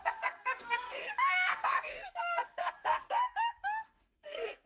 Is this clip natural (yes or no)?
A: no